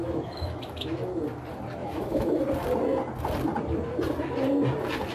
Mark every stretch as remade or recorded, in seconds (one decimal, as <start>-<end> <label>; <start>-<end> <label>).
0.0-1.2 remade; 1.2-1.8 recorded; 1.8-2.4 remade; 2.4-5.1 recorded